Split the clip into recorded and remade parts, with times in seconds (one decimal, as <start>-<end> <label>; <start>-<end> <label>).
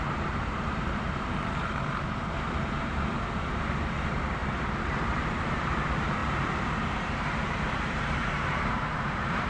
0.0-9.5 remade